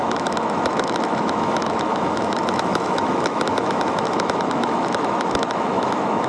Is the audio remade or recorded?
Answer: remade